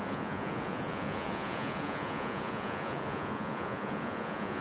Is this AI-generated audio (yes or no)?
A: yes